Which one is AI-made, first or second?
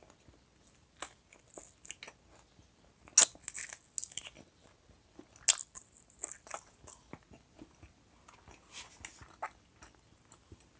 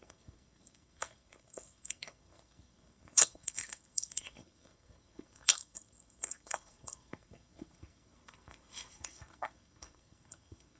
second